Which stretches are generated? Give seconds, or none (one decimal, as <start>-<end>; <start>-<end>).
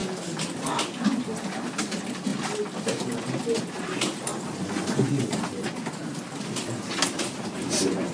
none